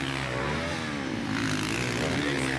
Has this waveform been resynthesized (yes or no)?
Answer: no